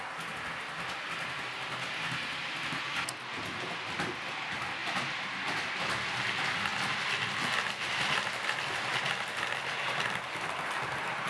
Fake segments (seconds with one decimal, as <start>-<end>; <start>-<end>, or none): none